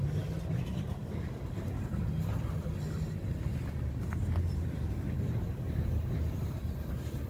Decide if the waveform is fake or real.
real